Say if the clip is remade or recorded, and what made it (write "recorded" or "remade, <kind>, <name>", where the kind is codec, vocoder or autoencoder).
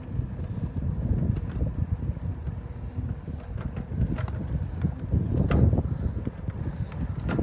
recorded